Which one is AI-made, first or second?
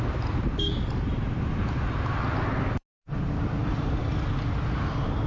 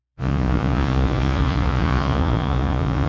second